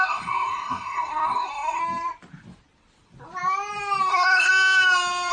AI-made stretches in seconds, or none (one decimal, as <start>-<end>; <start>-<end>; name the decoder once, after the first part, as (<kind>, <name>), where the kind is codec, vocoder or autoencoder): 0.0-1.8 (codec, SNAC); 4.1-4.5